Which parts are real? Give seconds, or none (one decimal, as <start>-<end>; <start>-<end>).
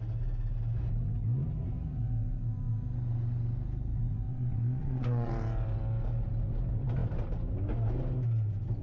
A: 0.0-4.3; 5.3-8.8